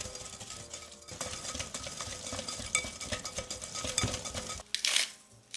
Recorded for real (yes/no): yes